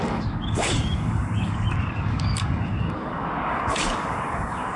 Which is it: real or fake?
fake